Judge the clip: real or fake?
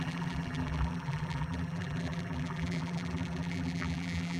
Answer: fake